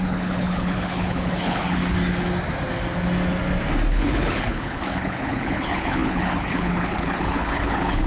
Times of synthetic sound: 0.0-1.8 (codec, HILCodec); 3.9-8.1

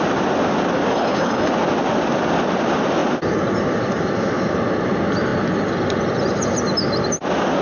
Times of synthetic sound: 0.9-1.5 (codec, HILCodec)

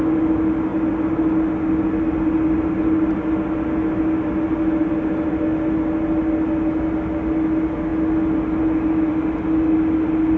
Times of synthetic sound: none

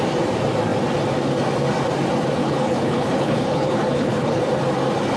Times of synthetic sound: 2.4-4.4 (codec, HILCodec)

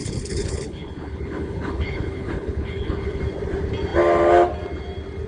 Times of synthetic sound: 0.0-3.2 (codec, HILCodec)

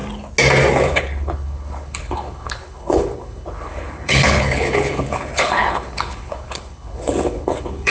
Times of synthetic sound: 0.7-7.9 (codec, HILCodec)